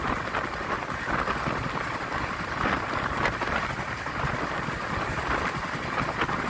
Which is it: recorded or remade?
recorded